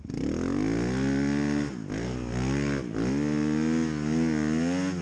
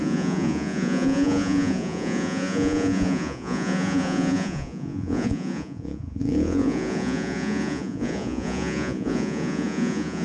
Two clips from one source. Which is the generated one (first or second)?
second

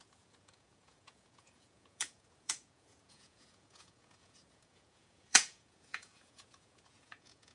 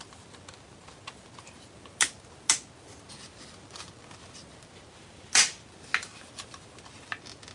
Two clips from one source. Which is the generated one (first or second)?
first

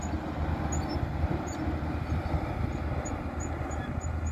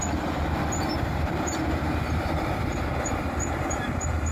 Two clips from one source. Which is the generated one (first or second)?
second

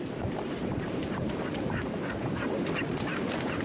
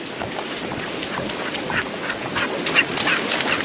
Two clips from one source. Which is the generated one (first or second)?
first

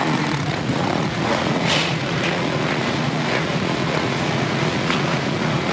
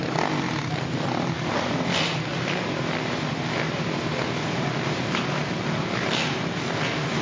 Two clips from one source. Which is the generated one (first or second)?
first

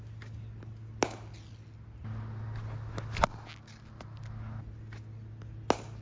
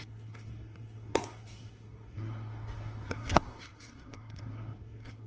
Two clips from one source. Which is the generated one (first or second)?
second